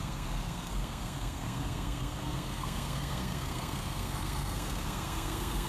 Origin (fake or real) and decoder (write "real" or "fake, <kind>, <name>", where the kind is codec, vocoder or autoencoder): fake, codec, SNAC